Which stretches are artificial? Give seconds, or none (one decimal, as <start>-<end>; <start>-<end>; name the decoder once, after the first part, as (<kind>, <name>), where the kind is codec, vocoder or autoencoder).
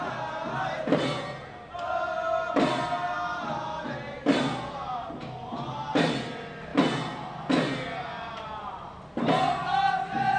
none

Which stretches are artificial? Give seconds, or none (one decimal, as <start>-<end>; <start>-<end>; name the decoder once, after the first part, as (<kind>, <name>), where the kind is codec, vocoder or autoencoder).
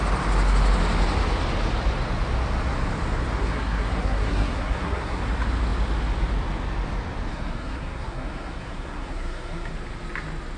3.4-5.2 (codec, SNAC); 7.3-9.7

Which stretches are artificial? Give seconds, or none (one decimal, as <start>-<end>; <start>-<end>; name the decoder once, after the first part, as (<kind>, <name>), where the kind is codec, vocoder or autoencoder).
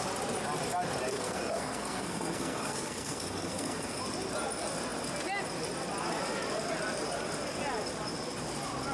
1.1-4.0 (codec, SNAC)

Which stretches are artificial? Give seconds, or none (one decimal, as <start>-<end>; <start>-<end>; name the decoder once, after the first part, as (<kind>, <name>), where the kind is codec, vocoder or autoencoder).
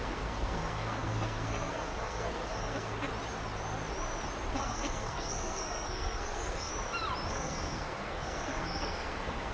0.0-3.1 (codec, SNAC); 4.5-6.7; 7.3-9.5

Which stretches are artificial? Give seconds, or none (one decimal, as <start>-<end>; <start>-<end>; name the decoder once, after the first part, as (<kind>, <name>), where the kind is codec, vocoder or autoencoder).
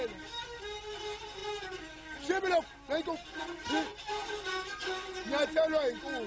none